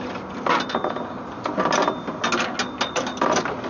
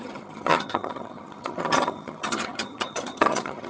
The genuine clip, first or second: first